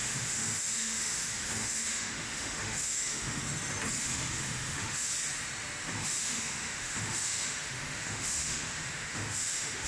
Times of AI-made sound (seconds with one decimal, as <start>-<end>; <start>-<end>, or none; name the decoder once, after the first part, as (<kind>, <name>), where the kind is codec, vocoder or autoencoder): 0.0-3.4 (autoencoder, DAC-VAE); 4.0-5.1; 6.0-9.9